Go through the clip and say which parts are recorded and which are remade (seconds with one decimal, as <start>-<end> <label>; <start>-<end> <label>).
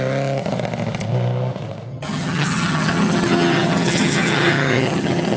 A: 0.0-1.9 recorded; 1.9-5.4 remade